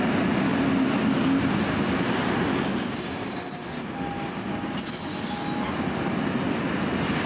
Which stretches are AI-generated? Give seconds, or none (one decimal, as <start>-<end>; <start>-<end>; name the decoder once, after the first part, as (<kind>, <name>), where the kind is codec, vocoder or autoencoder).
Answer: none

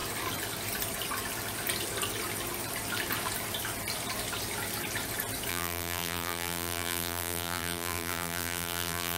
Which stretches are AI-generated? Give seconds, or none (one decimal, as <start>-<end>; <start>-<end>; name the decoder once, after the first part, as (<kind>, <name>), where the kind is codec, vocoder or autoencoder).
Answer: 5.5-9.2 (vocoder, BigVGAN v2)

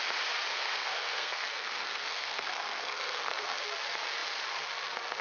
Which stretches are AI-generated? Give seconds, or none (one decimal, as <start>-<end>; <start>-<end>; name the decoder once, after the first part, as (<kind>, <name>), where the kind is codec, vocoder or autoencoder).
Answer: 0.5-3.6 (codec, SNAC)

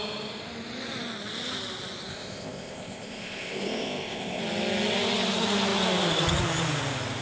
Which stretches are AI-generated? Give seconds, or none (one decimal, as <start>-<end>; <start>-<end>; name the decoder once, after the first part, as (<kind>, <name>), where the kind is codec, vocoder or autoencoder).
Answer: 2.1-4.4 (codec, ZipCodec)

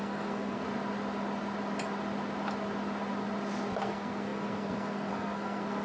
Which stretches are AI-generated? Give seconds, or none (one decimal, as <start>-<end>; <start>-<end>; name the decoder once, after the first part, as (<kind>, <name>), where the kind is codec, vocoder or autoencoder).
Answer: 0.0-0.7 (codec, SNAC); 3.8-5.8

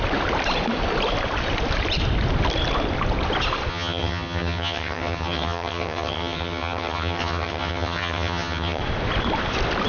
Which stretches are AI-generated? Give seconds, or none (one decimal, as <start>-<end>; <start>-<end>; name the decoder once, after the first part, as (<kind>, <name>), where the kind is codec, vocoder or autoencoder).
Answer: 3.7-8.8 (vocoder, HiFi-GAN)

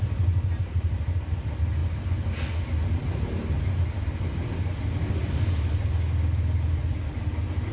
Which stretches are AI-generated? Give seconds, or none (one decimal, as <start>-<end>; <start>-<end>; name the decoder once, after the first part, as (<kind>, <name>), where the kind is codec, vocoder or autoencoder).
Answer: none